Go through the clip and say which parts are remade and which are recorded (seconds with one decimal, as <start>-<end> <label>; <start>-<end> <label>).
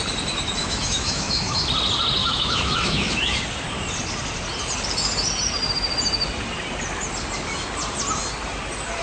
0.0-0.6 recorded; 0.6-1.6 remade; 1.6-2.2 recorded; 2.2-3.4 remade; 3.4-9.0 recorded